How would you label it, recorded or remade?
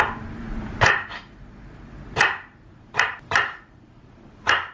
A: remade